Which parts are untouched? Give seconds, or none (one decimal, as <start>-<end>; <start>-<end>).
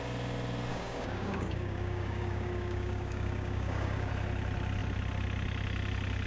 0.0-0.7; 4.1-6.3